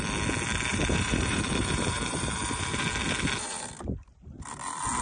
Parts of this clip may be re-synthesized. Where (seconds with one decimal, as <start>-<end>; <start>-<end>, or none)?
0.7-3.7